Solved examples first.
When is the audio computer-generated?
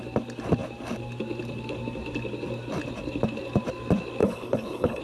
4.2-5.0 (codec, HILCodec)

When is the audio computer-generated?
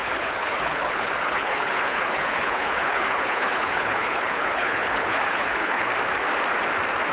0.0-5.9 (codec, HILCodec)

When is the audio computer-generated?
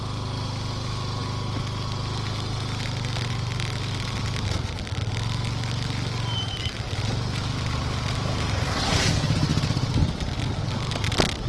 none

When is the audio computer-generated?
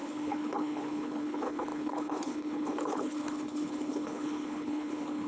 0.0-5.3 (codec, HILCodec)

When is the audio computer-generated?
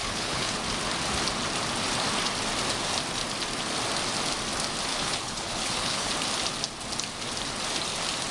0.0-0.6 (codec, HILCodec); 4.9-6.1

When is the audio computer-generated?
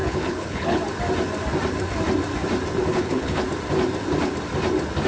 0.0-0.8 (codec, HILCodec); 2.8-3.4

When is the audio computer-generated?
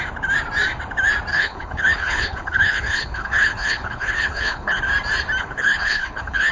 1.3-4.8 (codec, HILCodec); 5.4-6.5